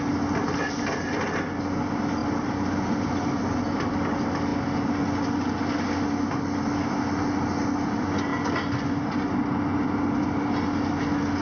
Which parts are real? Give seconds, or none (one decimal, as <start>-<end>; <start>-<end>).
0.0-11.4